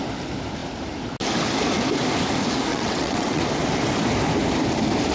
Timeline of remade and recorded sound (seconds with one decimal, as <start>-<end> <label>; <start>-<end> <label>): 0.0-2.7 recorded; 2.7-3.4 remade; 3.4-5.1 recorded